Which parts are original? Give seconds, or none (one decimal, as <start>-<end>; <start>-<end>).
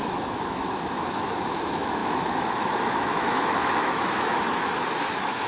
none